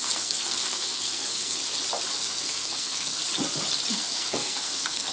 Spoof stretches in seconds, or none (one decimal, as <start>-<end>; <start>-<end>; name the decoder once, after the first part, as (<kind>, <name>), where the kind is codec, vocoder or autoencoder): 0.0-1.6 (codec, SNAC); 2.1-3.2; 3.9-5.1